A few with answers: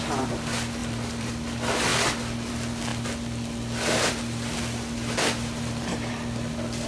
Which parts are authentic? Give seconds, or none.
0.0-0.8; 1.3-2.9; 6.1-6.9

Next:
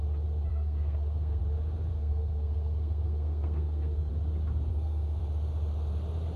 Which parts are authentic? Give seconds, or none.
0.0-0.5; 1.4-1.9; 4.1-4.7; 5.2-6.4